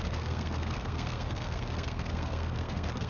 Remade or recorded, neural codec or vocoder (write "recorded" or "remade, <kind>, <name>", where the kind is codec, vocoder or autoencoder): remade, codec, SNAC